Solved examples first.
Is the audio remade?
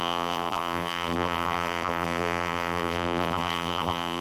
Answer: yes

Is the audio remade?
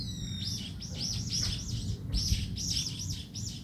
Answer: no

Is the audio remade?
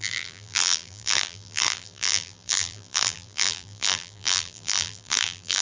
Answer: yes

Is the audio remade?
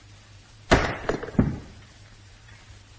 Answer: yes